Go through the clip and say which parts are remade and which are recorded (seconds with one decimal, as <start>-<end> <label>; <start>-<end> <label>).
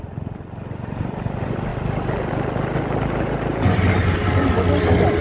0.0-5.2 recorded